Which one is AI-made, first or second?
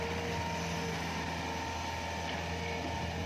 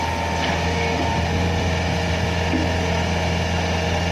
first